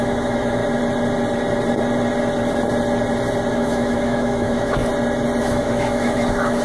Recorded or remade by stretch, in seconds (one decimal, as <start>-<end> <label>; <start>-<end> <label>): 0.0-0.6 remade; 0.6-3.5 recorded; 3.5-4.9 remade; 4.9-5.4 recorded; 5.4-6.6 remade